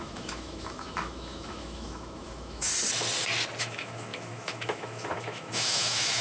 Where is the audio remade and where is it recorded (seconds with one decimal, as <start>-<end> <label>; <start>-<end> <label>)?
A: 0.0-2.7 remade; 2.7-3.6 recorded; 3.6-6.2 remade